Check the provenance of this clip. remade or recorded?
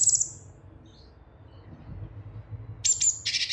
recorded